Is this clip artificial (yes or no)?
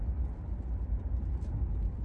no